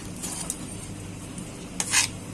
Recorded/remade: recorded